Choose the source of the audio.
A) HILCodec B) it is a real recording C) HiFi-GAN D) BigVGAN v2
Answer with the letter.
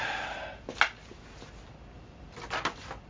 B